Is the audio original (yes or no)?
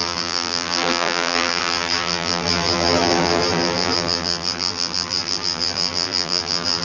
no